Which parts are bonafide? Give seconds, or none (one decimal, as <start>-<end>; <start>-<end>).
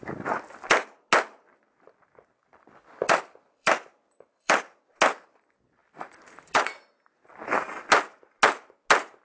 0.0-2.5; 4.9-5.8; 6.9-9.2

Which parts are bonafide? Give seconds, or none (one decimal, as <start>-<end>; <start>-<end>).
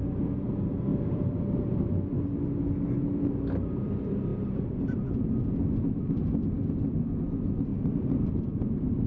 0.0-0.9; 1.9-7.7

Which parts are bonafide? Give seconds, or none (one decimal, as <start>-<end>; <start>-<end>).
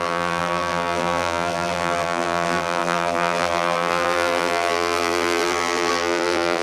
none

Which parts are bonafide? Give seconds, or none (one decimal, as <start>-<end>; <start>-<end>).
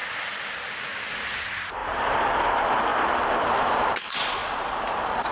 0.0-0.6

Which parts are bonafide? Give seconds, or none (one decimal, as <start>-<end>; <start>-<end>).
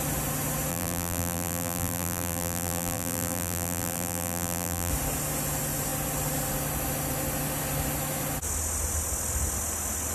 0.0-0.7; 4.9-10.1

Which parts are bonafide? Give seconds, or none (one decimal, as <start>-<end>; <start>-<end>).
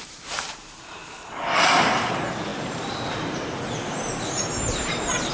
1.0-1.8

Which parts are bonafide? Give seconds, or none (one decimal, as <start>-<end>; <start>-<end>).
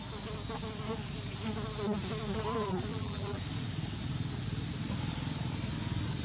0.0-2.9; 3.4-6.2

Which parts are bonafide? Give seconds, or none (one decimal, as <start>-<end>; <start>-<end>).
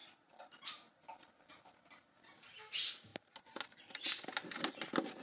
0.0-5.2